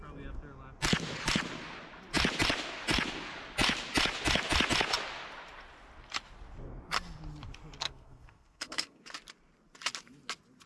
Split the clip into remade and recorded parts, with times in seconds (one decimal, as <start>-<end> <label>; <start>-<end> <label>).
0.0-7.8 recorded; 7.8-9.0 remade; 9.0-10.7 recorded